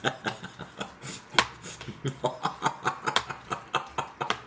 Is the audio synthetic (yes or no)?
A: no